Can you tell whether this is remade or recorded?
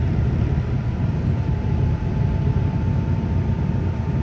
recorded